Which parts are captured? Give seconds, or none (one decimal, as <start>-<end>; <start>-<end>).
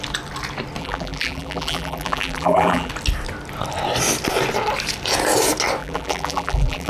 0.0-0.8; 2.9-5.8